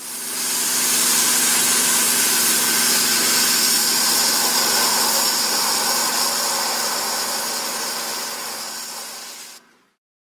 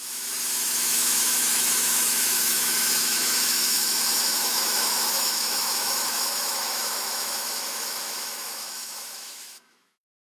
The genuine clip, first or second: first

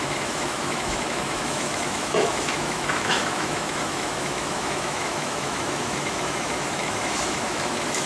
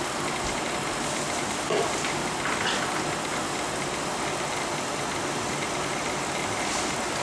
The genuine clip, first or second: second